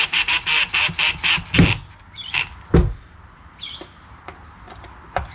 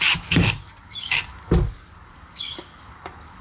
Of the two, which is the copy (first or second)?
second